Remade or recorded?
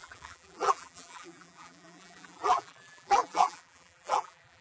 remade